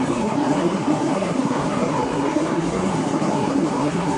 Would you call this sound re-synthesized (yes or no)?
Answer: yes